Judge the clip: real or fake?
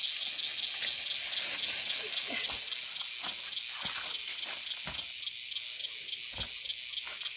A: real